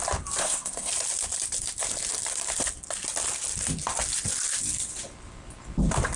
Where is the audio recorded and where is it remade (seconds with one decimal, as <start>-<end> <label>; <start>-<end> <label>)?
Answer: 0.0-0.4 recorded; 0.4-0.9 remade; 0.9-6.2 recorded